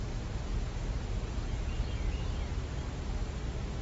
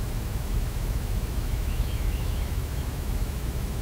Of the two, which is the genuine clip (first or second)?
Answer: first